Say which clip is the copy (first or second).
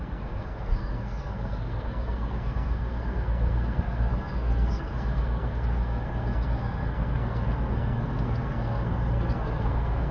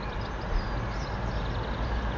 first